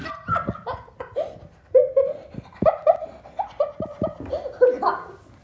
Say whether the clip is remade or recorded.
recorded